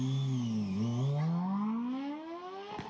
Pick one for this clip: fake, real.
real